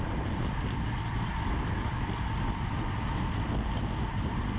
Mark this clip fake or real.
real